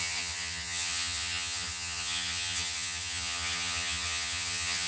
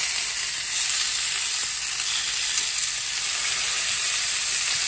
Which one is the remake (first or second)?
first